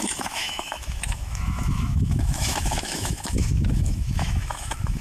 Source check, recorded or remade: remade